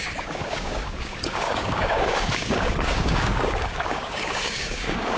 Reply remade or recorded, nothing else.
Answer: remade